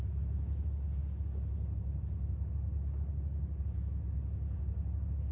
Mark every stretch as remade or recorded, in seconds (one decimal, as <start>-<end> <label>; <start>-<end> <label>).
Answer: 0.0-5.3 recorded